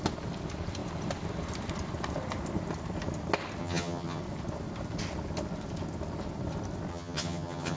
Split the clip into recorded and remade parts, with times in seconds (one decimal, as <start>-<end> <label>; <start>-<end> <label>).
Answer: 0.0-3.6 recorded; 3.6-4.2 remade; 4.2-6.9 recorded; 6.9-7.8 remade